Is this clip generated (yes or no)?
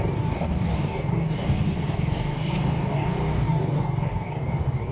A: yes